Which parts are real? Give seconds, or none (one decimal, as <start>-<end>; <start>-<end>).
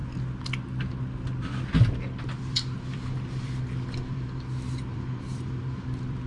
0.0-2.2